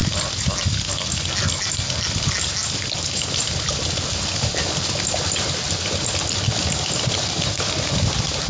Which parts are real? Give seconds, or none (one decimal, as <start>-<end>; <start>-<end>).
0.0-8.5